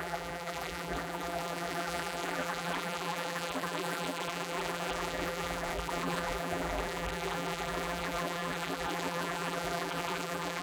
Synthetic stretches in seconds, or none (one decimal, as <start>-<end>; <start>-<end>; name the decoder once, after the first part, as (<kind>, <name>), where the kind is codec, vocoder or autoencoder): 0.0-10.6 (vocoder, BigVGAN v2)

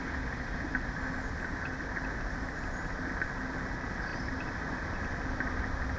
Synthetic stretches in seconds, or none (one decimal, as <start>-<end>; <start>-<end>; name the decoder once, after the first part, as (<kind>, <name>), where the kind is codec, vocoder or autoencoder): 4.1-4.9 (vocoder, BigVGAN v2)

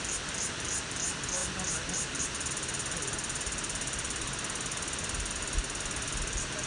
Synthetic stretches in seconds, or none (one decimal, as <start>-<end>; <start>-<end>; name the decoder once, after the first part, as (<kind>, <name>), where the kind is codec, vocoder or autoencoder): none

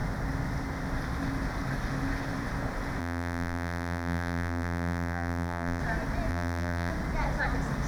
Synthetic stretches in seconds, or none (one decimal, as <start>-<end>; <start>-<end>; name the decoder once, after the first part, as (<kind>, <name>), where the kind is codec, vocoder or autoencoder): 3.0-5.8 (vocoder, BigVGAN v2); 6.3-6.9

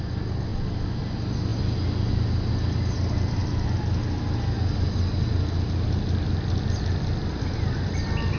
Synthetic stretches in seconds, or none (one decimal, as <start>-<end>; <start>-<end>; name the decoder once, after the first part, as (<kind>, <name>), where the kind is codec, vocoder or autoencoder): 0.5-1.0 (vocoder, BigVGAN v2)

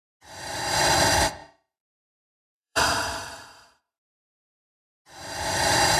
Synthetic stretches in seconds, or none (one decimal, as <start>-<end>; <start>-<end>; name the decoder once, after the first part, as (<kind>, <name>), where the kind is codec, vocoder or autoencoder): 1.4-4.8 (vocoder, BigVGAN v2)

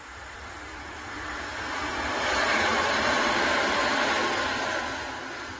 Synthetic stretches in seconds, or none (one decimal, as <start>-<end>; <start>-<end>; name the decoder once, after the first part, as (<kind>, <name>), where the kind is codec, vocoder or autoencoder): 0.7-2.2 (vocoder, BigVGAN v2); 2.7-4.3